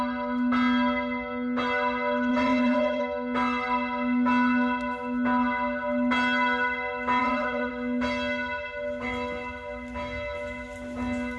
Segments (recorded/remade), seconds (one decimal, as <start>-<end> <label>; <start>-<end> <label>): 0.0-2.3 recorded; 2.3-3.0 remade; 3.0-7.2 recorded; 7.2-7.7 remade; 7.7-11.4 recorded